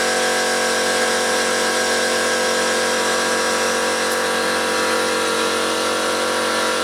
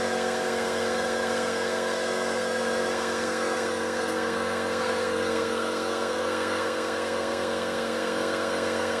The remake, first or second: second